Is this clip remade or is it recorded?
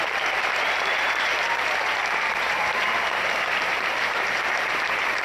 remade